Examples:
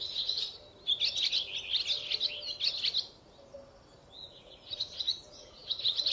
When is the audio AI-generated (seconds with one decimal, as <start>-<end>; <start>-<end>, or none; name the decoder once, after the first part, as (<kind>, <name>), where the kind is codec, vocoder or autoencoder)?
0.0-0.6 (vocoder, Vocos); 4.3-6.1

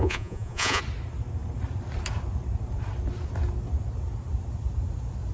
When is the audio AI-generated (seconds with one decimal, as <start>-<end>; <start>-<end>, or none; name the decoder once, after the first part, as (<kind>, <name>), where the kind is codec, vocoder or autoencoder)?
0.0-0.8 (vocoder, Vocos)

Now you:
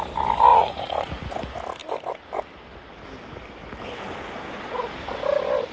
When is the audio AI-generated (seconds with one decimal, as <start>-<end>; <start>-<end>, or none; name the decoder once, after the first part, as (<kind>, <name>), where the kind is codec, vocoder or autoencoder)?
0.5-1.1 (vocoder, Vocos)

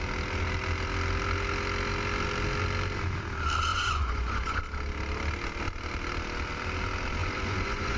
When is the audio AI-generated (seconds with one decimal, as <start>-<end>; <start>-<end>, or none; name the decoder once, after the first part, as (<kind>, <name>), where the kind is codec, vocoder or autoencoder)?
3.7-4.6 (vocoder, Vocos); 7.2-8.0

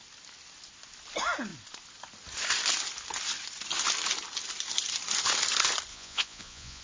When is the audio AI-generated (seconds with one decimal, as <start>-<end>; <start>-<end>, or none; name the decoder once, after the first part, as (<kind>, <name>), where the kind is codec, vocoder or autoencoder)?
5.9-6.8 (vocoder, Vocos)

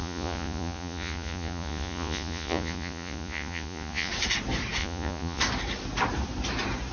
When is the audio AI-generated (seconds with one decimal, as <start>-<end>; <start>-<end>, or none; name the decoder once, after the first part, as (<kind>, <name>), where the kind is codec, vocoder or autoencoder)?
0.0-4.1 (vocoder, Vocos); 4.8-5.4

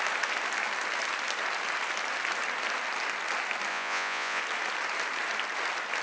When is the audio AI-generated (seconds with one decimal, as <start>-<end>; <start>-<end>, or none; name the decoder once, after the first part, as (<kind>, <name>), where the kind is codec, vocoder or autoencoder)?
3.7-4.4 (vocoder, Vocos)

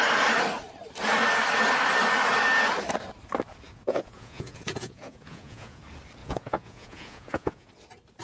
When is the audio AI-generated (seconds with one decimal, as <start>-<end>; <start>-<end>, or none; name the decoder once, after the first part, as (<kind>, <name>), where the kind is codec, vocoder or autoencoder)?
3.9-5.8 (vocoder, Vocos); 6.2-7.7